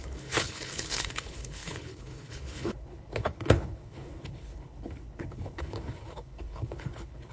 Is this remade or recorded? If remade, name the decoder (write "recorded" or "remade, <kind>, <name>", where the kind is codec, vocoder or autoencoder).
remade, codec, HILCodec